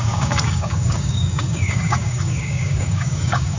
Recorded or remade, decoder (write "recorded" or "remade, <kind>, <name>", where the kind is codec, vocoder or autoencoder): remade, codec, DAC